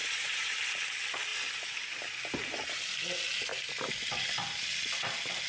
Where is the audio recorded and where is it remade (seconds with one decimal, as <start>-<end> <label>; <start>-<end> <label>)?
0.0-0.6 remade; 0.6-5.5 recorded